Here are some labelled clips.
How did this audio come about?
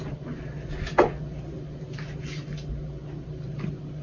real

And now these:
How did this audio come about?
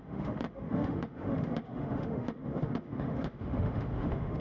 fake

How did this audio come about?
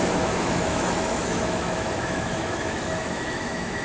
fake